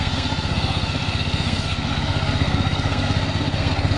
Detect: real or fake fake